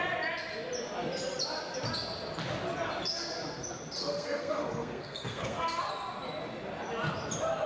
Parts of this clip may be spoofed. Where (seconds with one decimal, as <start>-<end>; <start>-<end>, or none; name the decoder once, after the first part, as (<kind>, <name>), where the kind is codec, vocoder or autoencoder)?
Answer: 4.0-5.9 (codec, SNAC)